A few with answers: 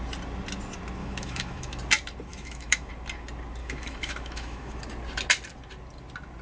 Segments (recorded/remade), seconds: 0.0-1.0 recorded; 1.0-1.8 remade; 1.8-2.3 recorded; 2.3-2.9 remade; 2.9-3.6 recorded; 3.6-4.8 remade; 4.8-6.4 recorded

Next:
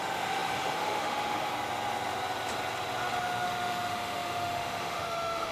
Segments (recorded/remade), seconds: 0.0-1.5 remade; 1.5-3.2 recorded; 3.2-5.5 remade

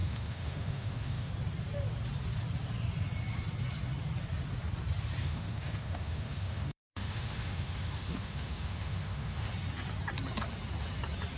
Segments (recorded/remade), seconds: 0.0-1.3 remade; 1.3-5.2 recorded; 5.2-9.5 remade; 9.5-11.4 recorded